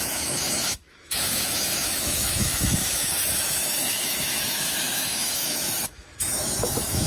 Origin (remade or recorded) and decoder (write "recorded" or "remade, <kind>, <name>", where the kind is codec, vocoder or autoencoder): remade, autoencoder, DAC-VAE